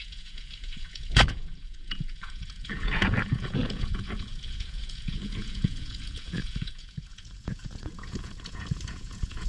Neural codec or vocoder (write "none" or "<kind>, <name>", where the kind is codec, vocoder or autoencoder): vocoder, Vocos